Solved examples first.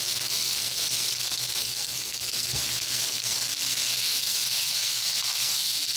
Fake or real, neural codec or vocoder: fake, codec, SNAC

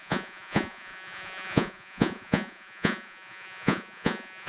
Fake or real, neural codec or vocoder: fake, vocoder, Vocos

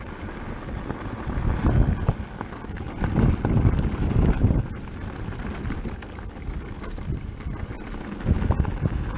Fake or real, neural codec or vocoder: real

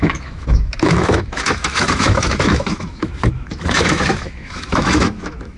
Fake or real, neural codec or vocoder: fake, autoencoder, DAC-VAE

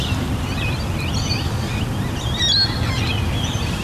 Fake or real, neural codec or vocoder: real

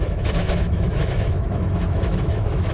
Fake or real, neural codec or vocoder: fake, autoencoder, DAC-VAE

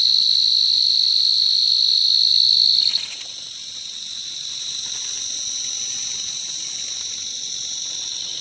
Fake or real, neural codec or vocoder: real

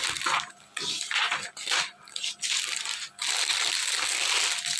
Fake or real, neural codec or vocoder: real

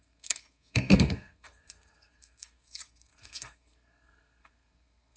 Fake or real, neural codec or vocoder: fake, codec, SNAC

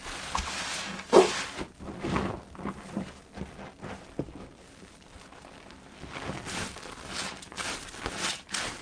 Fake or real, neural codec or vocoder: real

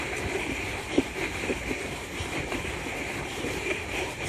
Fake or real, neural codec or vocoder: fake, vocoder, BigVGAN v2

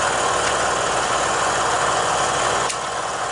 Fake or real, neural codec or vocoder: fake, vocoder, Vocos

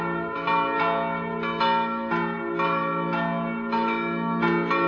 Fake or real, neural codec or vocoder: real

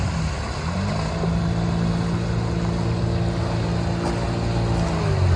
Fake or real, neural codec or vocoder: real